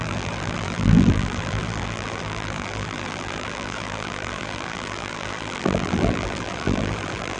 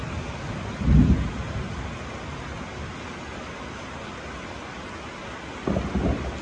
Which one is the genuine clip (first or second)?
second